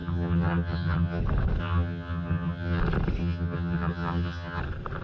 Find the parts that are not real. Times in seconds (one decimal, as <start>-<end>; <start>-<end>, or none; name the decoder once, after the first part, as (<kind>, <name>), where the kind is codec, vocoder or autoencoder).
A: 0.0-1.2 (vocoder, HiFi-GAN); 1.6-2.8; 3.2-4.6